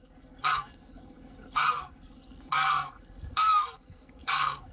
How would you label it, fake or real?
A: fake